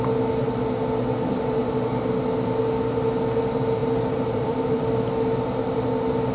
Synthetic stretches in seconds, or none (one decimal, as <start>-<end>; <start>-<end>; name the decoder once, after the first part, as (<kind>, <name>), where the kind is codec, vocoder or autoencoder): 3.8-4.8 (vocoder, BigVGAN v2)